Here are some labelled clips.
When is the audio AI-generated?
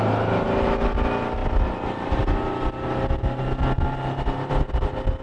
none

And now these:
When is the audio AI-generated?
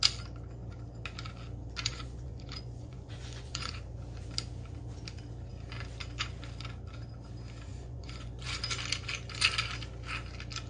1.9-3.7 (vocoder, Vocos); 7.7-8.6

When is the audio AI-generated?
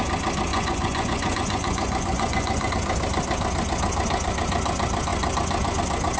0.5-2.7 (vocoder, Vocos)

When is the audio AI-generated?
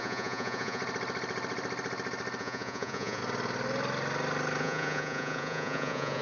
0.0-0.8 (vocoder, Vocos); 2.4-3.2; 4.6-6.2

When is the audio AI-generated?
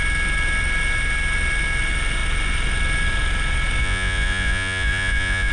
3.8-5.5 (vocoder, Vocos)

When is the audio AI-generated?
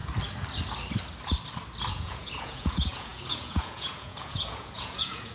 1.9-5.3 (vocoder, Vocos)